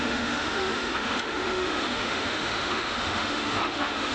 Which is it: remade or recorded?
remade